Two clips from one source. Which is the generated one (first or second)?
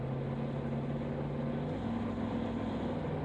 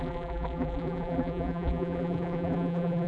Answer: second